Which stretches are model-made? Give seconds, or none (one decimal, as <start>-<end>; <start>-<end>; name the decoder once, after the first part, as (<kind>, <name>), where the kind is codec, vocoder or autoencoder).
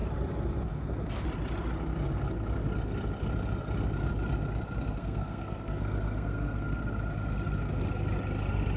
5.0-6.8 (codec, SNAC)